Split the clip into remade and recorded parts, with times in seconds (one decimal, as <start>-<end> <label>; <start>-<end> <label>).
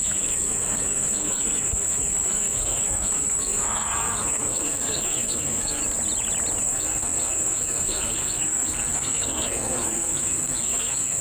0.0-5.8 remade; 5.8-6.6 recorded; 6.6-11.2 remade